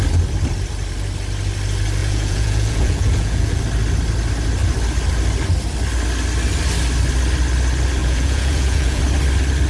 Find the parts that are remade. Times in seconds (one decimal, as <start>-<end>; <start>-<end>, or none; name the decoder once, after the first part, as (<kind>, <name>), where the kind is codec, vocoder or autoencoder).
2.0-3.6 (vocoder, Vocos); 8.0-9.0